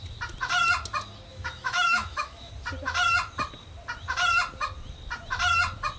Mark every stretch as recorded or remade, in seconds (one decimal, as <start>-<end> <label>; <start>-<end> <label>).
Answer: 0.0-1.3 recorded; 1.3-2.5 remade; 2.5-6.0 recorded